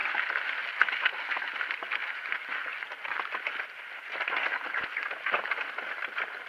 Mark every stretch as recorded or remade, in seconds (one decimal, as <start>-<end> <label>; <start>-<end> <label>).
0.0-6.5 recorded